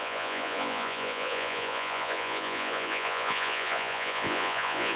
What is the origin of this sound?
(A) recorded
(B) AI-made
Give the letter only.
B